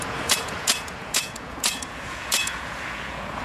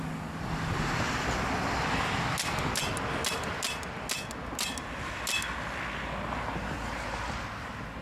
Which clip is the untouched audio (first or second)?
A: second